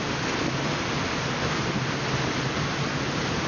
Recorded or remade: recorded